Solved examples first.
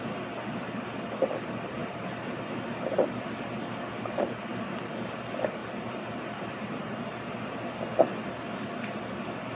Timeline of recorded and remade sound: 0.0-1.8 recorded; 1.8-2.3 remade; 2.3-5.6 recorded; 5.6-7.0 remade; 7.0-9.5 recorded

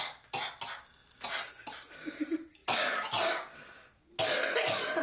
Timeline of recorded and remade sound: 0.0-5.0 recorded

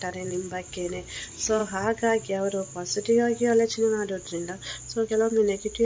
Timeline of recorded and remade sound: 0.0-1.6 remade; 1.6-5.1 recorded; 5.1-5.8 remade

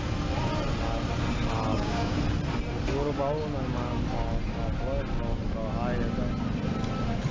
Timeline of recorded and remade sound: 0.0-1.7 recorded; 1.7-2.2 remade; 2.2-7.3 recorded